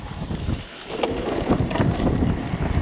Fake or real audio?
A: real